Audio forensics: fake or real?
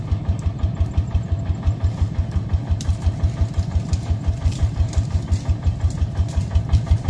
real